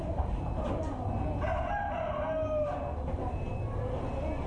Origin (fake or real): real